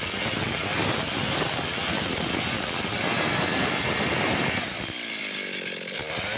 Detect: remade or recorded recorded